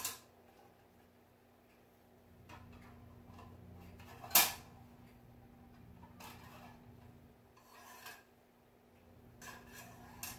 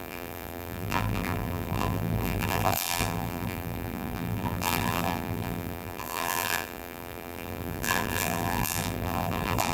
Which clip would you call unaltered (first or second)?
first